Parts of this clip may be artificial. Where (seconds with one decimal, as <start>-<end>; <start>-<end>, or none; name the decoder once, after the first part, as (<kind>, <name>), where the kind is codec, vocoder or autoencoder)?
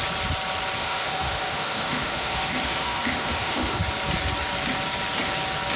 0.8-3.8 (autoencoder, DAC-VAE)